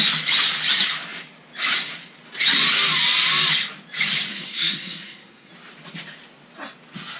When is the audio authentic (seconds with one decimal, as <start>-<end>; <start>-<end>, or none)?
0.0-4.3; 5.5-7.2